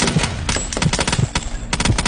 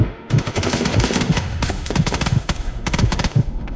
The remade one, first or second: second